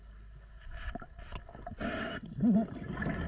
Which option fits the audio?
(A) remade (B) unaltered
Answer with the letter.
B